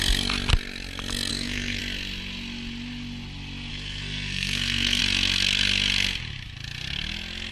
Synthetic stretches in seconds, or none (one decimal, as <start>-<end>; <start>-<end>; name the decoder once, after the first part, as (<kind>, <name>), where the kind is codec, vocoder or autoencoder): 1.3-1.8 (codec, SNAC); 3.7-5.0